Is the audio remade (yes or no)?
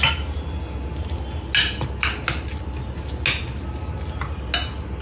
no